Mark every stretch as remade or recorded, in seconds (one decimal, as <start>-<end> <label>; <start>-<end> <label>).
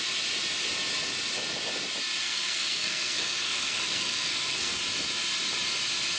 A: 0.0-2.2 recorded; 2.2-4.8 remade; 4.8-6.2 recorded